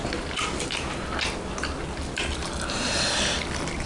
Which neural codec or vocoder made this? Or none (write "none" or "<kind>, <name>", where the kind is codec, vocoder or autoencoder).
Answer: none